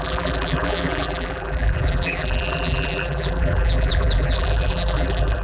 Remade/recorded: remade